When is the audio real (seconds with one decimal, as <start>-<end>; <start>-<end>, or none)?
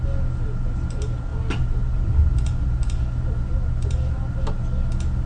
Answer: 0.0-5.3